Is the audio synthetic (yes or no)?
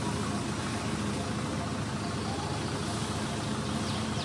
no